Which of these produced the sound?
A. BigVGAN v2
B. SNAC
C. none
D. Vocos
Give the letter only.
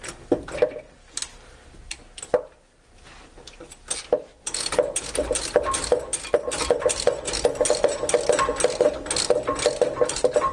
C